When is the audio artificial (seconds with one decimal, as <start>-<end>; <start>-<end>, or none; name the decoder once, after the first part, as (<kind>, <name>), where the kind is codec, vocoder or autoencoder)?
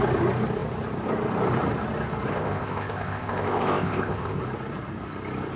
2.3-4.4 (codec, ZipCodec)